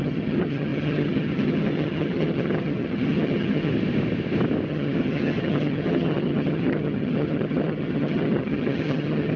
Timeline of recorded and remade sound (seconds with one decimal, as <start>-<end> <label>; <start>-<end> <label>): 0.0-3.7 remade; 3.7-4.7 recorded; 4.7-9.4 remade